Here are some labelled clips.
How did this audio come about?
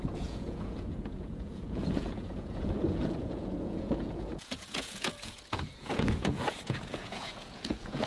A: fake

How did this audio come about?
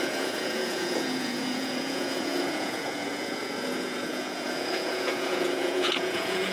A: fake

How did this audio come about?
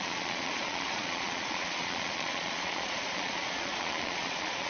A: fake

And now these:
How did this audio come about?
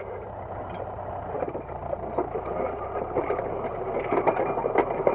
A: real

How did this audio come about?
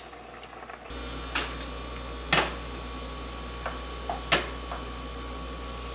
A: real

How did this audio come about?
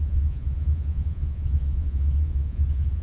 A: fake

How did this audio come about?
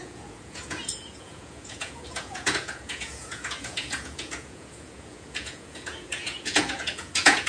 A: fake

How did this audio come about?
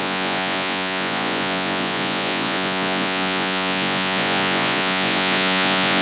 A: fake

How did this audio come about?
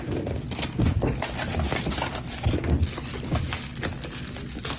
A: real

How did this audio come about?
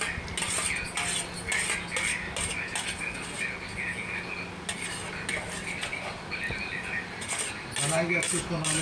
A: real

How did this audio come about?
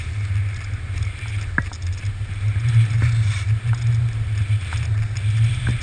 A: real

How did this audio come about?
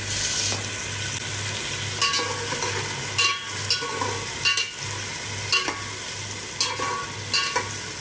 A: real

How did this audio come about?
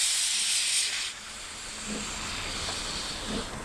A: real